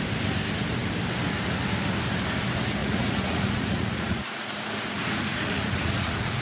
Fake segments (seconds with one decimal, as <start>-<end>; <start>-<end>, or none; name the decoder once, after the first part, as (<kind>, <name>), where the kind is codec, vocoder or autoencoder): 2.8-6.4 (vocoder, Vocos)